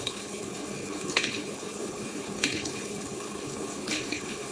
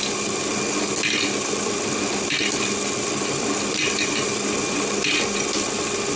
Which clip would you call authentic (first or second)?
second